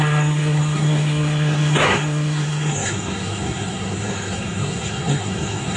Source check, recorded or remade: remade